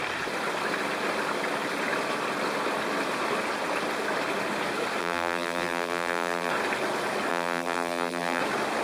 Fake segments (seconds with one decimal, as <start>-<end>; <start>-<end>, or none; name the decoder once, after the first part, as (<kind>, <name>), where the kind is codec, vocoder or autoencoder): 5.0-6.5 (vocoder, BigVGAN v2); 7.3-8.4